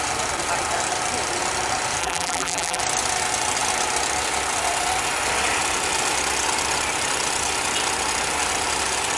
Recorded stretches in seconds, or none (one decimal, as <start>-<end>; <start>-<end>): 0.0-2.0; 2.8-9.2